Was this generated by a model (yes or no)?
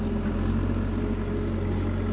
no